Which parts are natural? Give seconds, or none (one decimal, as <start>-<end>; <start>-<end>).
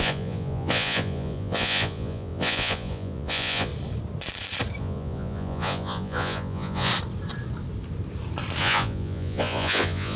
3.7-4.8; 6.9-8.6